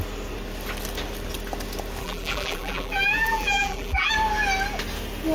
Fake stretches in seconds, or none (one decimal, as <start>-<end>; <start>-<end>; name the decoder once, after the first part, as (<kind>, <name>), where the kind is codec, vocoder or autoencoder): 2.0-4.1 (vocoder, BigVGAN v2)